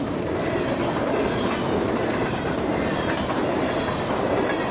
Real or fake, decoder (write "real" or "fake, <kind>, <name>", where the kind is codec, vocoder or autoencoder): real